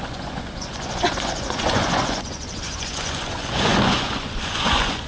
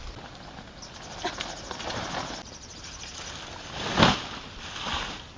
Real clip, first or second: second